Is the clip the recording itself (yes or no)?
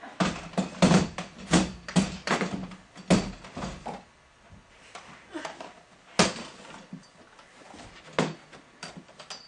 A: yes